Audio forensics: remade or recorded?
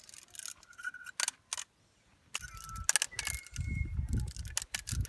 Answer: recorded